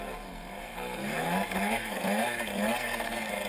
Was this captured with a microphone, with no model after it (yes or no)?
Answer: no